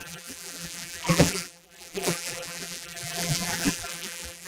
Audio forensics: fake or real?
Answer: fake